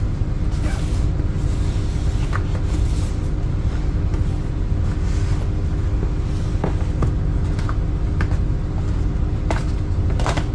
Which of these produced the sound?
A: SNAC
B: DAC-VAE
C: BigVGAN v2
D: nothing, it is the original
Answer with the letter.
D